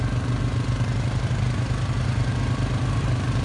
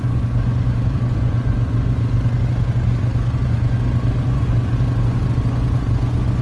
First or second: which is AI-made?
second